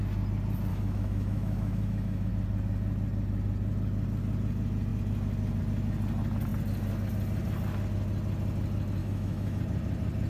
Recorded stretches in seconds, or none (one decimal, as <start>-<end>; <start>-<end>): 0.0-0.7; 2.3-9.0; 9.6-10.3